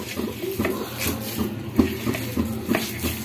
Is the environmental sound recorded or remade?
recorded